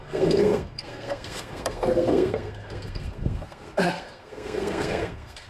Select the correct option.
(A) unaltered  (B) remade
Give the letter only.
B